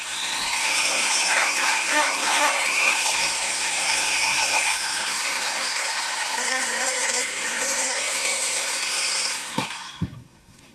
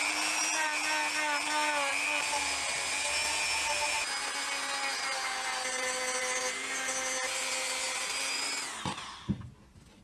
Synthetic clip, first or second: first